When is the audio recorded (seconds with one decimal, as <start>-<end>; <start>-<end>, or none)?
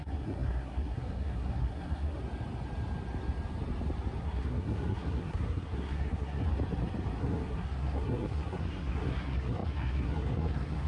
2.2-4.2; 6.5-7.2